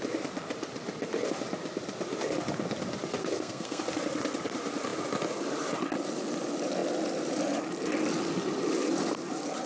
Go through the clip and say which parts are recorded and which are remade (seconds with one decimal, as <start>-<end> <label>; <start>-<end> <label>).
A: 0.0-3.2 recorded; 3.2-3.8 remade; 3.8-9.7 recorded